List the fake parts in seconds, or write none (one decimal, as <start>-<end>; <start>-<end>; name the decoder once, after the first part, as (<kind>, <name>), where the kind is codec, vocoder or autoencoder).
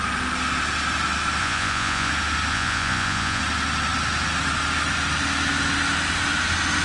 1.4-2.1 (vocoder, Vocos); 2.5-3.4